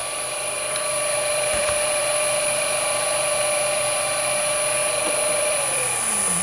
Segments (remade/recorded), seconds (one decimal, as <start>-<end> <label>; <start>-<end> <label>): 0.0-3.8 remade; 3.8-4.8 recorded; 4.8-6.4 remade